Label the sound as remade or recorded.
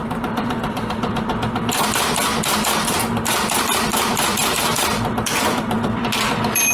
remade